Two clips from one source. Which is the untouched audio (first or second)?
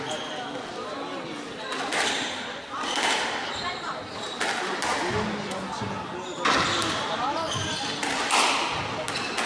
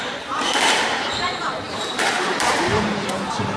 first